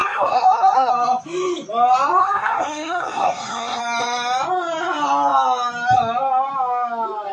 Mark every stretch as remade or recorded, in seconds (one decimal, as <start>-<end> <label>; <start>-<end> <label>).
0.0-0.9 remade; 0.9-2.2 recorded; 2.2-3.8 remade; 3.8-7.3 recorded